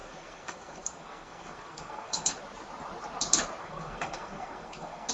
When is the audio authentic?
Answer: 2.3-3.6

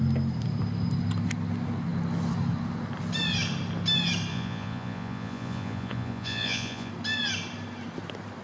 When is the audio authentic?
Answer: 0.0-4.3; 6.9-8.4

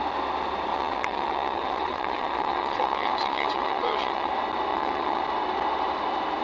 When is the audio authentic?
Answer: 0.0-0.7; 4.3-4.7; 5.2-6.4

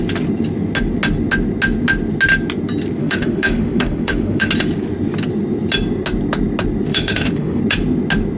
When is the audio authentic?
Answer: 0.0-3.0; 4.5-6.9; 7.6-8.4

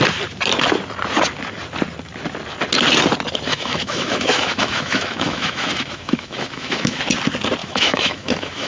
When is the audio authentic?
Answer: 0.0-3.5; 7.0-7.6

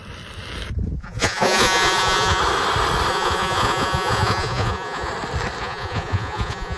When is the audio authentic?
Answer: 0.0-1.0; 2.4-3.1; 5.1-5.6

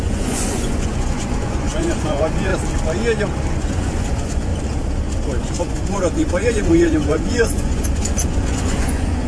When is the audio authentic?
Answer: 2.5-3.5; 4.5-5.6